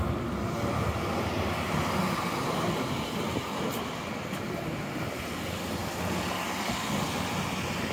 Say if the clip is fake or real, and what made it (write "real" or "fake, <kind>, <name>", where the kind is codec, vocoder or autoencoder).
real